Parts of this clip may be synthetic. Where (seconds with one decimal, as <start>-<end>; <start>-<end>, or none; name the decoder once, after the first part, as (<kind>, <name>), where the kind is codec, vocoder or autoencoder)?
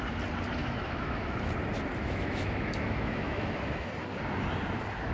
0.6-1.5 (autoencoder, DAC-VAE); 2.0-3.9